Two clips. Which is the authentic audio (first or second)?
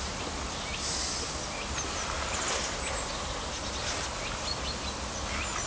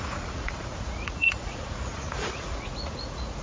first